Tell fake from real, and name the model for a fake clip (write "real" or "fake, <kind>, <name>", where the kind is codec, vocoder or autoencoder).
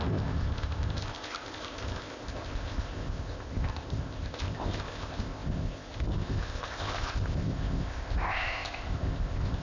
fake, codec, ZipCodec